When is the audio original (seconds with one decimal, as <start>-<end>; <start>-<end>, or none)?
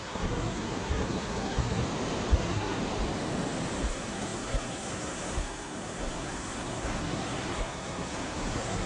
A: 1.8-2.3; 2.8-3.9